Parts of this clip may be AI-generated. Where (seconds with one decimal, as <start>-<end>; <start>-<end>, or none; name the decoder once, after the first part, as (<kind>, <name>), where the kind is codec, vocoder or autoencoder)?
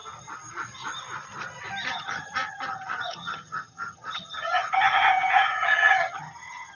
1.9-6.8 (vocoder, HiFi-GAN)